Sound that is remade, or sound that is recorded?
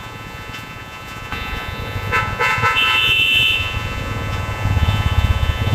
remade